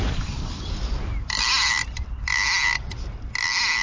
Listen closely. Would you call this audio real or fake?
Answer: real